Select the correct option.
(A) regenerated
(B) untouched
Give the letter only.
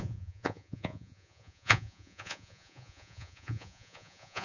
A